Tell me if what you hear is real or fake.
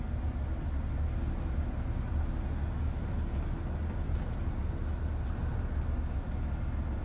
real